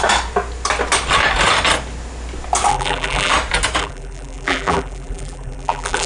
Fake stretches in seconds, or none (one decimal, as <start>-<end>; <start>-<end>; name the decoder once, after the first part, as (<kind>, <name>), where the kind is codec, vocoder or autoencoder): 2.7-3.3 (vocoder, BigVGAN v2); 3.8-6.1